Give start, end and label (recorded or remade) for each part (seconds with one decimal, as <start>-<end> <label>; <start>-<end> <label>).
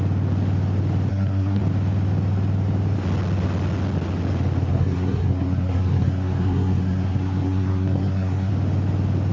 0.0-1.1 recorded; 1.1-1.6 remade; 1.6-4.7 recorded; 4.7-8.5 remade; 8.5-9.3 recorded